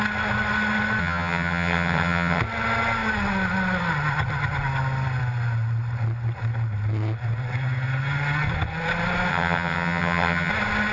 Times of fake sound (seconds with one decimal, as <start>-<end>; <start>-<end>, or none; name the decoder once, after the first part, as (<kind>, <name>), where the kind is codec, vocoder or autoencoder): 1.0-2.4 (vocoder, HiFi-GAN); 9.3-10.5